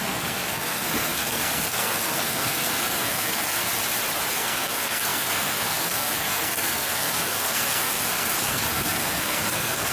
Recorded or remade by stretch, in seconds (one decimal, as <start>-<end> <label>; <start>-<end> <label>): 0.0-3.7 remade; 3.7-4.3 recorded; 4.3-9.9 remade